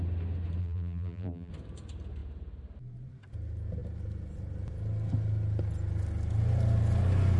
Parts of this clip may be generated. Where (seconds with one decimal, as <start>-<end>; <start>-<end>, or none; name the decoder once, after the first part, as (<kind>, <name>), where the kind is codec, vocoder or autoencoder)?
0.6-1.5 (vocoder, BigVGAN v2)